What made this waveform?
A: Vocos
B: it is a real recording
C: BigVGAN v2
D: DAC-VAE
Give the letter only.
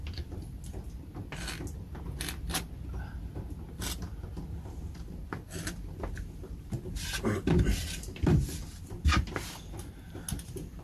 B